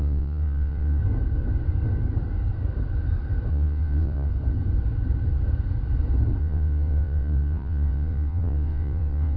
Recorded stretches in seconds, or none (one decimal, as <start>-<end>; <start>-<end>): 1.0-3.5; 4.3-6.4